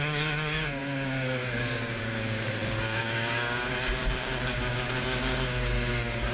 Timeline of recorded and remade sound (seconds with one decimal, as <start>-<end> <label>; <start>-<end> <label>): 0.0-6.3 remade